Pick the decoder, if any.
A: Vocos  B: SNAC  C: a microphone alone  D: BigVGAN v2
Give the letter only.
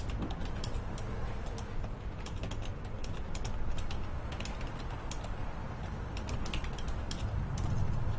C